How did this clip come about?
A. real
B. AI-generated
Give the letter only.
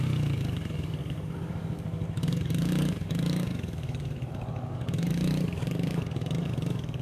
B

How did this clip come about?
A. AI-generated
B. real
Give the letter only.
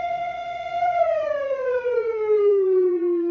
A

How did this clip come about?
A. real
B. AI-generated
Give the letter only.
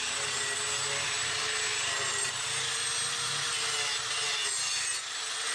A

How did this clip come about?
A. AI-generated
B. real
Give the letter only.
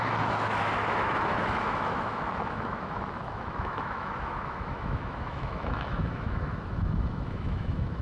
A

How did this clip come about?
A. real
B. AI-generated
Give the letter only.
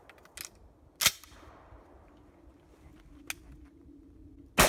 A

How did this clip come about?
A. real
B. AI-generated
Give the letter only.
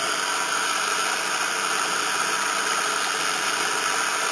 A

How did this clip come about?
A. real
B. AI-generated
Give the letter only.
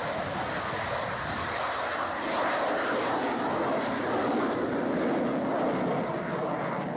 A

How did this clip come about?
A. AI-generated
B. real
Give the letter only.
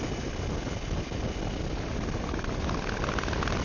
B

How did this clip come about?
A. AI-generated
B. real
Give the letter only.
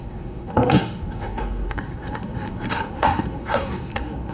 A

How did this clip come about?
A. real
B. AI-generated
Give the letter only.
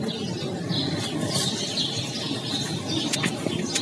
A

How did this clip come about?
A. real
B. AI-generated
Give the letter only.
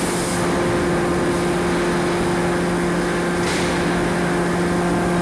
A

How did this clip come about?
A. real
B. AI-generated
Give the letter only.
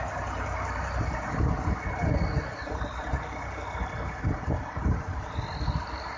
A